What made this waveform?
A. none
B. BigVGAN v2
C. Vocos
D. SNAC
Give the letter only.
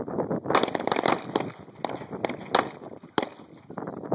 A